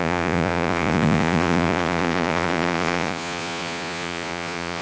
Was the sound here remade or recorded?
remade